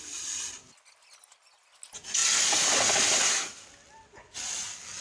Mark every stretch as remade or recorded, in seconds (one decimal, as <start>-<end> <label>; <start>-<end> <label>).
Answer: 0.0-5.0 recorded